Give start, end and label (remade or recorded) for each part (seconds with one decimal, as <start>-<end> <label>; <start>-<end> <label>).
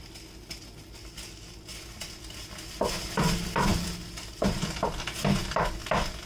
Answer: 0.0-6.3 recorded